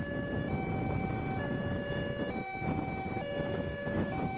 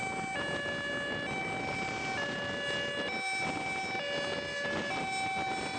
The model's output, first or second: first